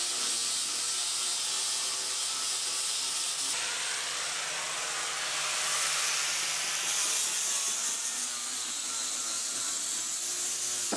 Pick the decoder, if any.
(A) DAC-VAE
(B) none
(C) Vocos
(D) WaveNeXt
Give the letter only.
B